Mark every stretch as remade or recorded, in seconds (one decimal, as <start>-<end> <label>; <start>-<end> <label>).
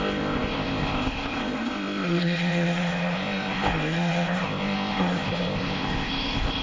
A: 0.0-6.6 remade